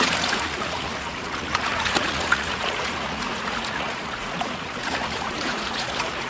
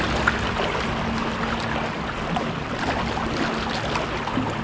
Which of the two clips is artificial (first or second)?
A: first